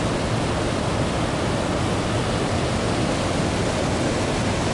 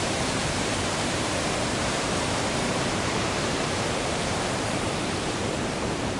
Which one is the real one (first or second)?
first